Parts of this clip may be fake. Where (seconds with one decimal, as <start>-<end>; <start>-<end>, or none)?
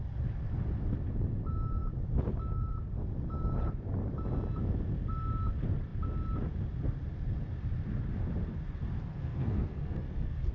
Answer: 9.1-10.5